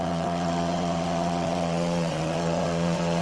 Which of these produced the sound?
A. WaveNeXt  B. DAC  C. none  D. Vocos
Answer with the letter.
A